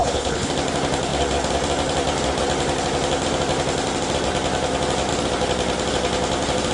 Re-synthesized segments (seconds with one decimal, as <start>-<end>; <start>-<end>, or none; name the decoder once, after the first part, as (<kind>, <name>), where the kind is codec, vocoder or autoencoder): 0.0-0.5 (codec, HILCodec)